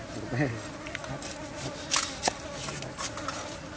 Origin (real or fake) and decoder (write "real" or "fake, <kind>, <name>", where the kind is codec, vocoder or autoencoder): real